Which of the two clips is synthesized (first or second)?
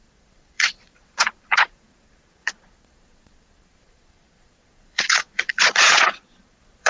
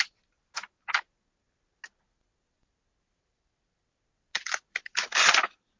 first